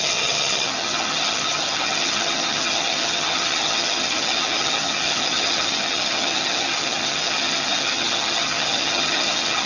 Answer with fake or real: fake